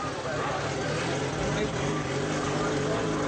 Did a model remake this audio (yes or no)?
no